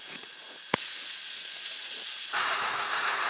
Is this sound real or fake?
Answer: fake